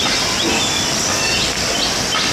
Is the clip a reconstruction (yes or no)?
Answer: no